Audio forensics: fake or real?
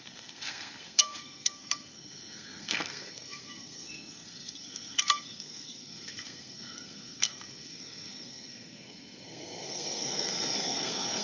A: fake